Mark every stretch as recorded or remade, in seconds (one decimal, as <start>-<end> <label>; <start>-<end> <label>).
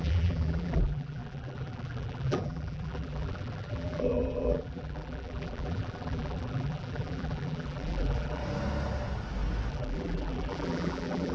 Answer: 0.0-8.4 remade; 8.4-9.7 recorded; 9.7-11.3 remade